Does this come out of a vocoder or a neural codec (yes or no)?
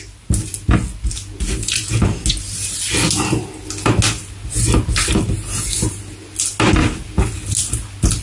no